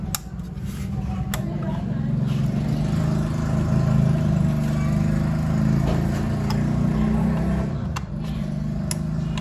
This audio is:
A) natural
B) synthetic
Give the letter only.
A